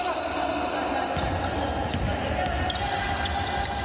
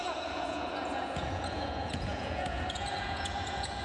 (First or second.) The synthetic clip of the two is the second